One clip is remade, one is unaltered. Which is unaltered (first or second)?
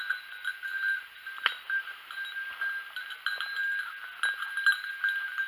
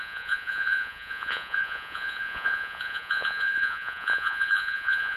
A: first